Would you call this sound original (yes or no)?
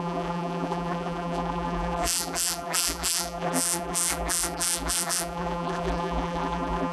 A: no